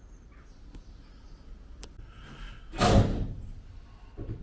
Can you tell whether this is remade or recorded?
recorded